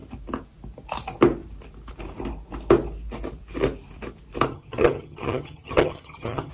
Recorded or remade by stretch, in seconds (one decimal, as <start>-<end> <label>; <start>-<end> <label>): 0.0-4.5 recorded; 4.5-6.5 remade